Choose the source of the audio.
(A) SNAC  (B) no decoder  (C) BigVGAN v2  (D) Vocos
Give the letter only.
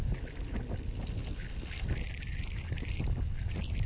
B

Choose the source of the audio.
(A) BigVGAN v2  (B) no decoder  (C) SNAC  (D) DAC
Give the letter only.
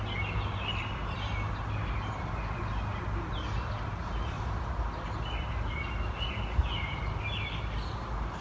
B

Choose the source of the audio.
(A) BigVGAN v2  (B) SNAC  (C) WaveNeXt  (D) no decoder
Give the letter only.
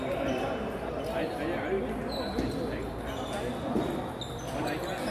D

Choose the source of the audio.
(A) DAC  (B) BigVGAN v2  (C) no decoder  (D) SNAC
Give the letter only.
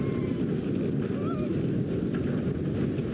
B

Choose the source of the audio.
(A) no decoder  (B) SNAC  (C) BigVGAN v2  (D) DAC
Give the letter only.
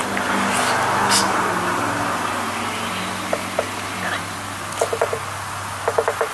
A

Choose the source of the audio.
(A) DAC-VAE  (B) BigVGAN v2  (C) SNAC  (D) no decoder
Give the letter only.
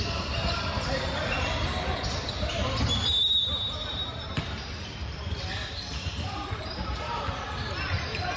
B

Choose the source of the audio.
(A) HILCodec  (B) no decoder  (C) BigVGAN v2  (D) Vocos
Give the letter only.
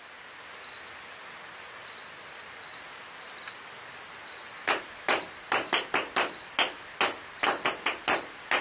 B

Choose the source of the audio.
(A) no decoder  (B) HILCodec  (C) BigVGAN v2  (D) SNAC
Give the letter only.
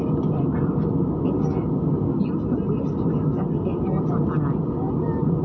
A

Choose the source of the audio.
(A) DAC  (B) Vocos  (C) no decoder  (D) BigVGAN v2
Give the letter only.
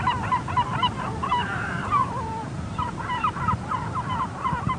D